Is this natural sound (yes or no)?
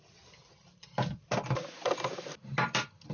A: yes